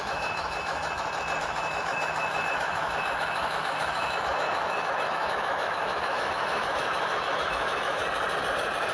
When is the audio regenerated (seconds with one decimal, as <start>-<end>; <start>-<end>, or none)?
0.0-0.8; 1.4-8.0